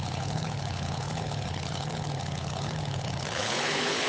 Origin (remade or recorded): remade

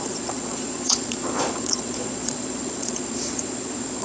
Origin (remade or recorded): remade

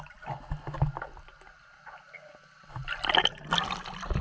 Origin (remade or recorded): recorded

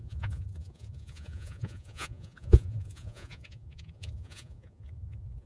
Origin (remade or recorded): remade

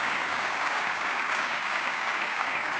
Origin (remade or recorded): remade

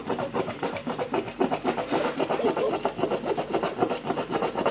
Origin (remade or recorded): recorded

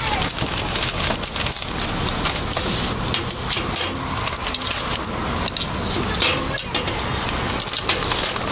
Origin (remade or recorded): recorded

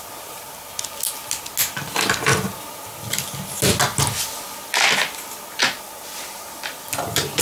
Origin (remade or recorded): recorded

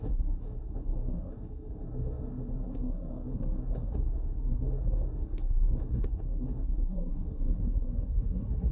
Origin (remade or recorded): remade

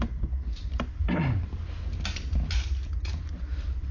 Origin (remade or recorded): recorded